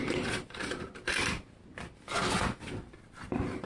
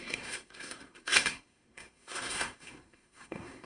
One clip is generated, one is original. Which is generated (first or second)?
second